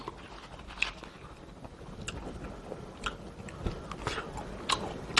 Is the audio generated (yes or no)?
no